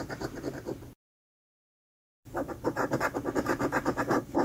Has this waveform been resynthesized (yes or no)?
yes